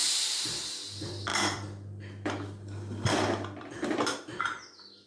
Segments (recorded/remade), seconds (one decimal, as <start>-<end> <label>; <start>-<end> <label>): 0.0-1.3 recorded; 1.3-4.4 remade; 4.4-5.1 recorded